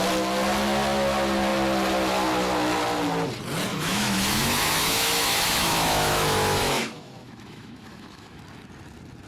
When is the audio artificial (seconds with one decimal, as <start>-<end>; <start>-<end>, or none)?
3.7-8.4